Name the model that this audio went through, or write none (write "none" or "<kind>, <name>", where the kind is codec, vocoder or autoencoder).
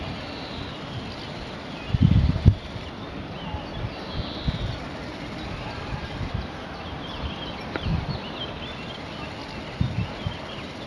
vocoder, BigVGAN v2